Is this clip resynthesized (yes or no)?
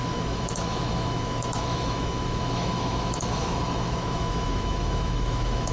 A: yes